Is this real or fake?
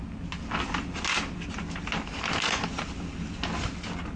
real